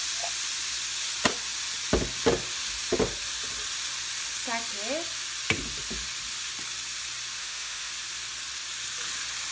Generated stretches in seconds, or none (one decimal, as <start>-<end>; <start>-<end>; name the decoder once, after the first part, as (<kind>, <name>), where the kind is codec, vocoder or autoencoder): 7.4-7.9 (autoencoder, DAC-VAE)

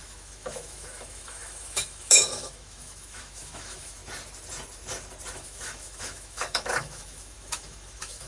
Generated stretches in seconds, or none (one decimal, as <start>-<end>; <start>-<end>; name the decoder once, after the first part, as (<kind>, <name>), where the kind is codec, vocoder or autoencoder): 0.0-4.0 (autoencoder, DAC-VAE); 5.3-8.3

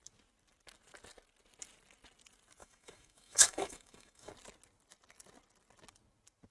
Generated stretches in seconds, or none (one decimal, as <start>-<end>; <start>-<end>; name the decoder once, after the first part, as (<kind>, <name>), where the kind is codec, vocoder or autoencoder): 2.6-4.3 (autoencoder, DAC-VAE)

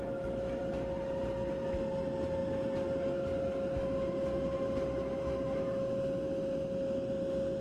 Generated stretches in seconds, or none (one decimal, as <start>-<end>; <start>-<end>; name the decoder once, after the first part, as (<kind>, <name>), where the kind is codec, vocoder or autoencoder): 0.0-0.6 (autoencoder, DAC-VAE)